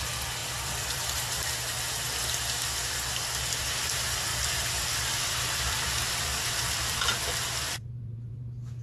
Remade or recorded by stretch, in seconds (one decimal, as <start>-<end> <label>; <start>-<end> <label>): 0.0-0.4 recorded; 0.4-1.0 remade; 1.0-4.3 recorded; 4.3-8.4 remade; 8.4-8.8 recorded